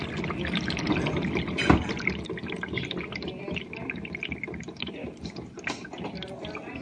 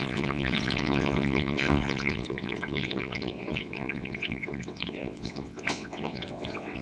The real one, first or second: first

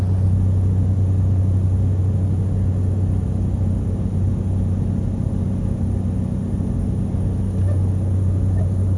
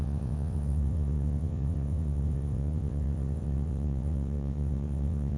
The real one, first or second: first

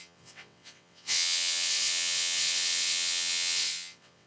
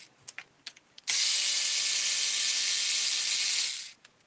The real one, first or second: second